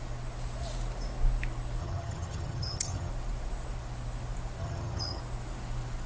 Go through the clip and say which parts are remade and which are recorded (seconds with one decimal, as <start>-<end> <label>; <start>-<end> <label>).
0.0-1.8 recorded; 1.8-3.1 remade; 3.1-4.6 recorded; 4.6-5.2 remade; 5.2-6.1 recorded